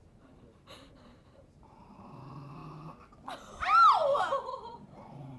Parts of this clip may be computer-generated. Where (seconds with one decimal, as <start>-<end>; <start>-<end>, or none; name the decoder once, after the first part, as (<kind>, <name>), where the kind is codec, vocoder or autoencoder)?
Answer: 0.0-2.6 (vocoder, BigVGAN v2); 4.2-5.4